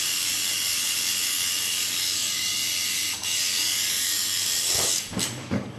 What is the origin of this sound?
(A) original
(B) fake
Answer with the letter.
B